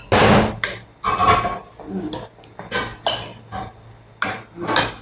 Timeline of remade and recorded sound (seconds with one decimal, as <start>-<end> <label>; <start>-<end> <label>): 0.0-5.0 recorded